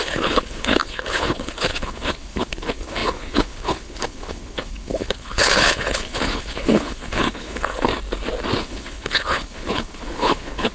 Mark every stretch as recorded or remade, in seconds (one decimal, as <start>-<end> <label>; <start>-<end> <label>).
0.0-7.9 remade; 7.9-8.6 recorded; 8.6-10.7 remade